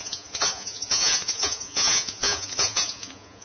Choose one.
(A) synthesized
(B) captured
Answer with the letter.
A